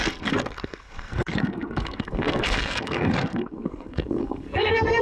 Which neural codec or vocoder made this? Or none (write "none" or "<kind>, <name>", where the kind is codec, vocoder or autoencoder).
codec, SNAC